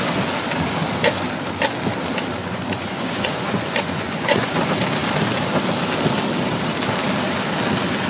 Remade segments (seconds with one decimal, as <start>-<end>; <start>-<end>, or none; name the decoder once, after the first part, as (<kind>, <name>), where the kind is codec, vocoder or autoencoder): 2.4-4.6 (vocoder, Vocos)